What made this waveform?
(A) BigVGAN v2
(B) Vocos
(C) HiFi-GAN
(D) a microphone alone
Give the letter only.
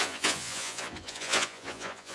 B